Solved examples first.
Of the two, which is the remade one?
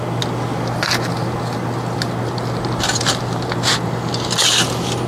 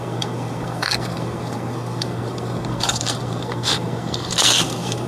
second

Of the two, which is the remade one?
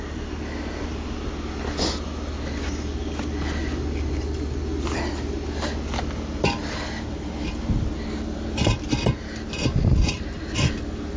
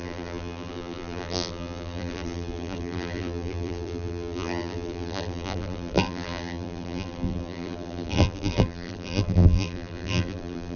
second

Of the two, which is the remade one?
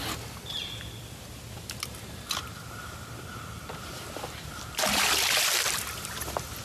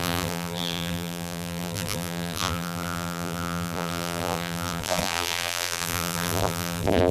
second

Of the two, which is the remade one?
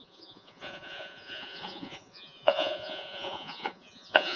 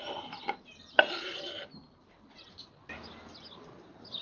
first